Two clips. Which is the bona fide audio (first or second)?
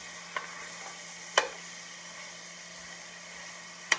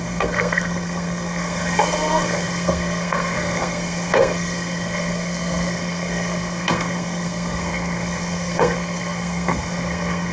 first